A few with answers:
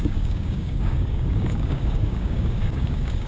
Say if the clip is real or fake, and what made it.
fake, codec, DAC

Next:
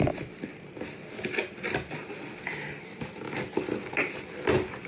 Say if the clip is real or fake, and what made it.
real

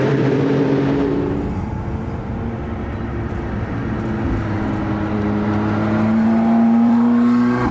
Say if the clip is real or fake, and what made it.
fake, vocoder, BigVGAN v2